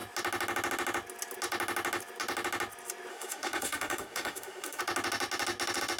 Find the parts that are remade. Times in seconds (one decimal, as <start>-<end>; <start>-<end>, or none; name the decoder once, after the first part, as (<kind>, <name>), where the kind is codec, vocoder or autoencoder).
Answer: 3.1-4.8 (autoencoder, DAC-VAE)